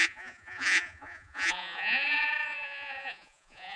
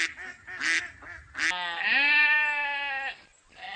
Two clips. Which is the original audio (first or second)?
second